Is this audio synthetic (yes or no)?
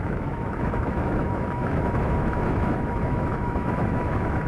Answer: yes